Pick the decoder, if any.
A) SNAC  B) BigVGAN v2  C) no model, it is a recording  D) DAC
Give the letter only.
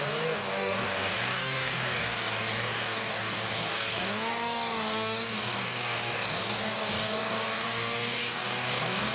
D